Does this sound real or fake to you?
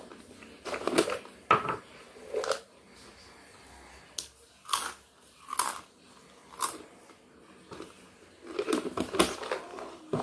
real